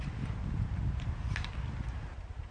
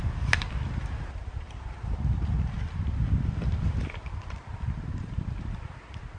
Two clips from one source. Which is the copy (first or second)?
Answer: second